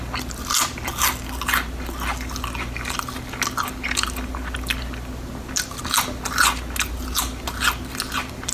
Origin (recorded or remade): recorded